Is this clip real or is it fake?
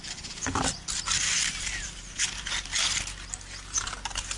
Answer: real